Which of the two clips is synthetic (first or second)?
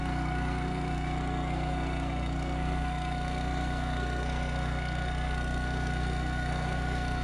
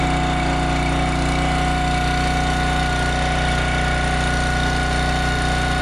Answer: first